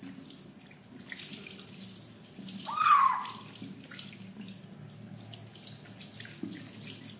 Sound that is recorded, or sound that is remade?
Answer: recorded